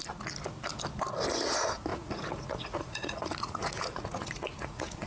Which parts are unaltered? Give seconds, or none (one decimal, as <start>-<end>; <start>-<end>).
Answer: 0.0-1.9